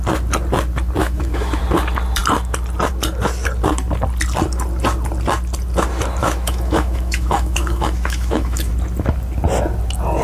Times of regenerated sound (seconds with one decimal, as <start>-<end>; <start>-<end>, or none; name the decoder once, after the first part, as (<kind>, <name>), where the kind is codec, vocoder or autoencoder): 1.0-1.6 (autoencoder, DAC-VAE); 6.2-8.7